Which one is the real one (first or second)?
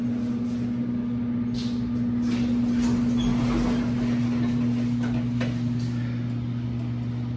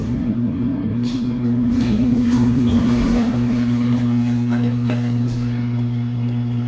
first